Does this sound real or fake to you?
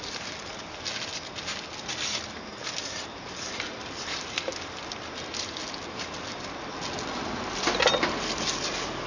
real